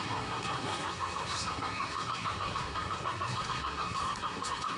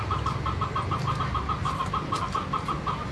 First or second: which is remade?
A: first